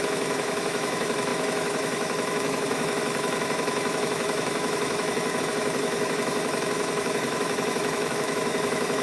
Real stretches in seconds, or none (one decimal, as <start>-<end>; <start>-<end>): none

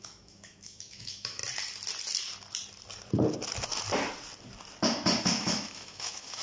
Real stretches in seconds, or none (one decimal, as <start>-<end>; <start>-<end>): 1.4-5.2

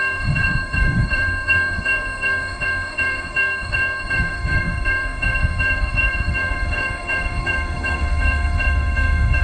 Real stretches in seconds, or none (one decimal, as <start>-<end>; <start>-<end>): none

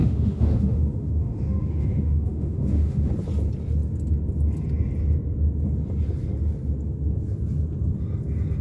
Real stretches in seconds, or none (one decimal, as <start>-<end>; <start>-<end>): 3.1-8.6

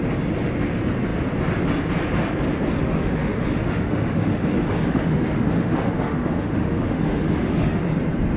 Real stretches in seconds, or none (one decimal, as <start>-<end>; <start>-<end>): 0.0-2.8; 7.8-8.4